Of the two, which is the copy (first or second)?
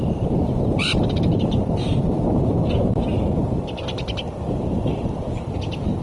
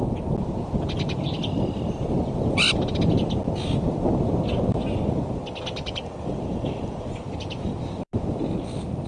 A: first